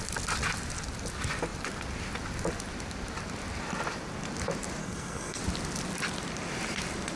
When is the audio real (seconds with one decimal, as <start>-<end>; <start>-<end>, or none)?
0.0-4.8; 5.4-7.2